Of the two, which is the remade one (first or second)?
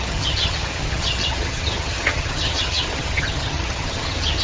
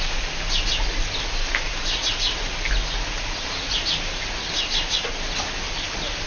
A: first